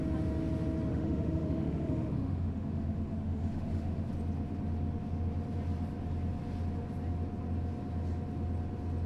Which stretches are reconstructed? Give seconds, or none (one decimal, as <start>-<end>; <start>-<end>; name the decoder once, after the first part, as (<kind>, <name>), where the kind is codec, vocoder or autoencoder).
0.9-4.1 (autoencoder, DAC-VAE)